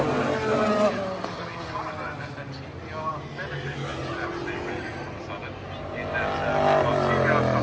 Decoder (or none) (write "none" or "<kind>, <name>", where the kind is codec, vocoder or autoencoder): none